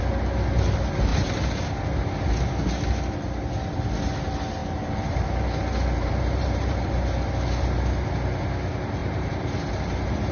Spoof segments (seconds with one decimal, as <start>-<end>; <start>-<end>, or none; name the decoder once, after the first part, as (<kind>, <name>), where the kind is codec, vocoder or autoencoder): 1.1-1.8 (vocoder, BigVGAN v2); 4.6-6.9; 9.0-10.3